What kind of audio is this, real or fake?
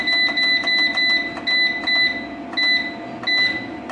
real